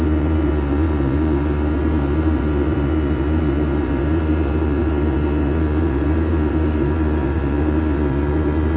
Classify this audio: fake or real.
fake